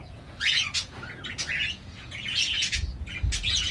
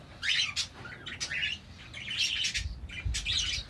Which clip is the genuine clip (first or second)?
second